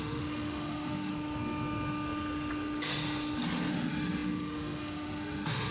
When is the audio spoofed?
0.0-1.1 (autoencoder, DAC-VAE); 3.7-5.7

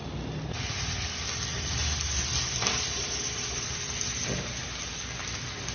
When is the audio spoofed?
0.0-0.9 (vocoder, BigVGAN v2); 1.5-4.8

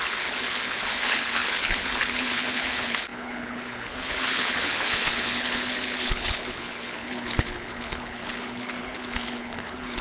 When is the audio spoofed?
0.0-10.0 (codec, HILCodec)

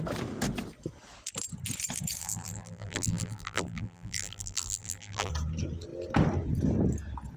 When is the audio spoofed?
2.2-5.3 (vocoder, BigVGAN v2)

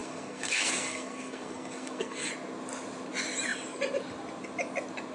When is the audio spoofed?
0.0-2.3 (codec, SNAC)

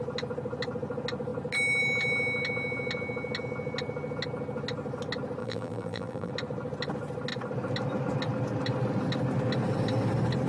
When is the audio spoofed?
5.4-6.3 (vocoder, BigVGAN v2)